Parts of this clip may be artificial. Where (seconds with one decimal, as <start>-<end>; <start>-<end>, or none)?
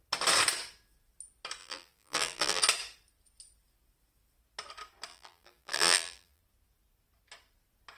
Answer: 1.6-2.6; 5.1-6.4